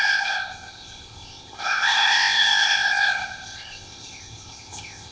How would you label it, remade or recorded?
remade